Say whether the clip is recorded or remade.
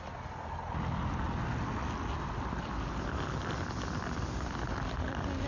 recorded